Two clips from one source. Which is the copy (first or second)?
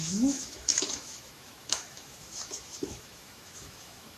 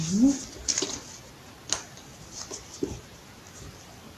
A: first